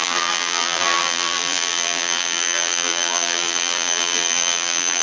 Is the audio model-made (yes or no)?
yes